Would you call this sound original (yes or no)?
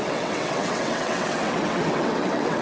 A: no